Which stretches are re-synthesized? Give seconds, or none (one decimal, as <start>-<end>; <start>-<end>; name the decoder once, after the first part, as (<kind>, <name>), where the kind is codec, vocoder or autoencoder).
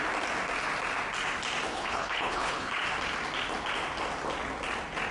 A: 1.7-2.8 (codec, HILCodec)